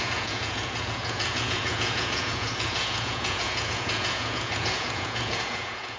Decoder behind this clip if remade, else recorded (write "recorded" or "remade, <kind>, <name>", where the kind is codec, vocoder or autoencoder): remade, vocoder, Vocos